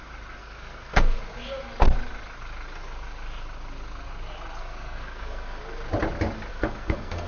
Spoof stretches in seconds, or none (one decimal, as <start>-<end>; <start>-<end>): 0.4-1.2; 4.6-5.6; 6.5-7.3